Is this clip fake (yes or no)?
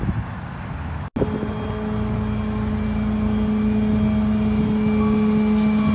no